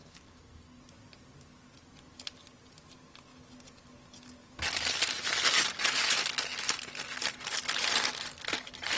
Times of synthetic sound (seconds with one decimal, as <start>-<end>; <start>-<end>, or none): 0.0-0.8